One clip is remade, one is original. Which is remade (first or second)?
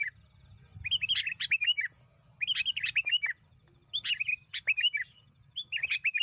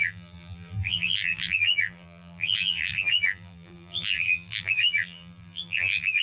second